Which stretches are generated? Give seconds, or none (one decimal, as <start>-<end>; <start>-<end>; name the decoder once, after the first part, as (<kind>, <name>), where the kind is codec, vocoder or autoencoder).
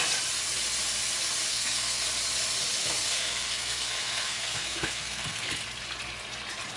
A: 1.5-2.0 (codec, SNAC); 2.8-5.5